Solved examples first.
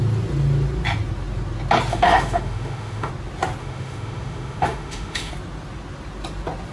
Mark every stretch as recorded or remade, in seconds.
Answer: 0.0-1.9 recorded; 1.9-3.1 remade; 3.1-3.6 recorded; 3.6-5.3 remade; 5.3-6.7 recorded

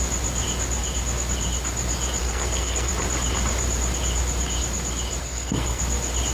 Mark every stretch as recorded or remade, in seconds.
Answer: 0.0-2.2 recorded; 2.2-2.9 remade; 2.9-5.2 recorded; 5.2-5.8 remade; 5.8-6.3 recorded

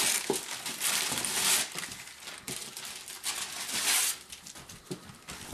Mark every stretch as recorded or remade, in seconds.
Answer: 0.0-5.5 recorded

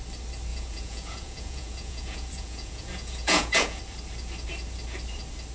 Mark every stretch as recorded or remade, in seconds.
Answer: 0.0-0.5 recorded; 0.5-3.8 remade; 3.8-5.5 recorded

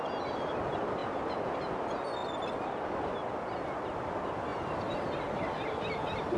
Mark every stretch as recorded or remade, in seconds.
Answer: 0.0-6.4 recorded